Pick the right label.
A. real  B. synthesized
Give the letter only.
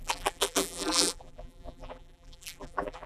B